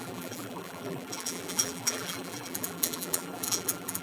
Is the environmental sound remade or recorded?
remade